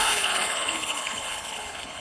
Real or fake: fake